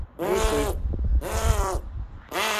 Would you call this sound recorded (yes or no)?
no